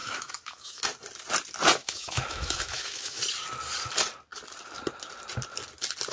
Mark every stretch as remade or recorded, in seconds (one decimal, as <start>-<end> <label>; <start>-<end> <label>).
0.0-0.8 remade; 0.8-1.8 recorded; 1.8-3.2 remade; 3.2-6.1 recorded